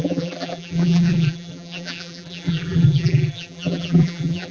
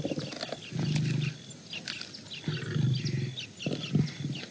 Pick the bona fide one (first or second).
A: second